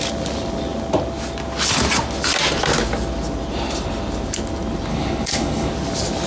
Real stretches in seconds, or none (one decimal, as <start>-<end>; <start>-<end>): 0.0-4.9; 5.7-6.3